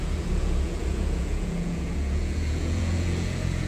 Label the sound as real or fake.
fake